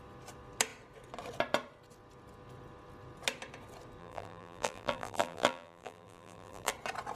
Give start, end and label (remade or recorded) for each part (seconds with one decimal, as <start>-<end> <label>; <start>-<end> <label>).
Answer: 0.0-4.0 recorded; 4.0-6.7 remade; 6.7-7.2 recorded